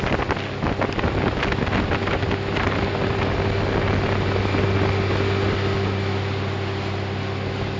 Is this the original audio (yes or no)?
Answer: yes